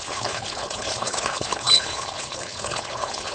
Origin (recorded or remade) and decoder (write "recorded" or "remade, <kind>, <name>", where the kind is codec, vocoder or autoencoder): remade, codec, HILCodec